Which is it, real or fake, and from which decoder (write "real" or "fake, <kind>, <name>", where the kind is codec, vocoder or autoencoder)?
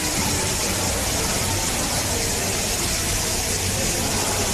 real